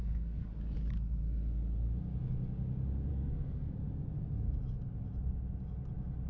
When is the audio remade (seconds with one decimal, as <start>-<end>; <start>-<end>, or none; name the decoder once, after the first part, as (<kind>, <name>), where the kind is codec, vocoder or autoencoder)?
0.0-0.5 (codec, SNAC); 3.1-3.7